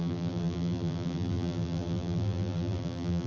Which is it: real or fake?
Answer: fake